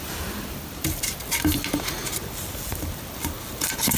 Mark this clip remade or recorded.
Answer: recorded